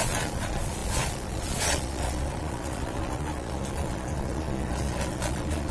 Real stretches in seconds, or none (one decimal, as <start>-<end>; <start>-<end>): none